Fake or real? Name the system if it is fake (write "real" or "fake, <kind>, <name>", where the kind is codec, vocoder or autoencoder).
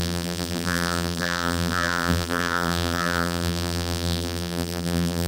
fake, vocoder, BigVGAN v2